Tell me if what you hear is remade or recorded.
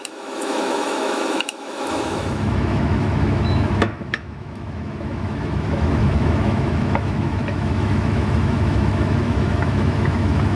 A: remade